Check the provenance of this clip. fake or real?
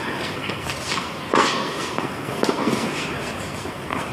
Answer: fake